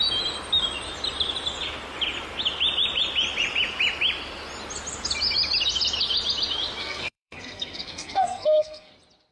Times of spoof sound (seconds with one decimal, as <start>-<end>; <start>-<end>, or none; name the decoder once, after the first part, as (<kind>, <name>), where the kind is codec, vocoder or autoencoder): 6.8-8.9 (codec, SNAC)